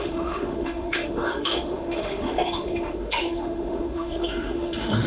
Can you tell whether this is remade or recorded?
remade